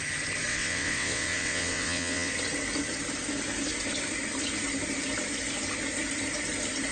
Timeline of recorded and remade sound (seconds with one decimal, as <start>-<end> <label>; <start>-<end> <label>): 0.0-0.5 recorded; 0.5-2.3 remade; 2.3-6.9 recorded